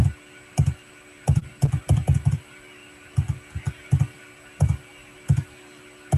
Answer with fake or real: real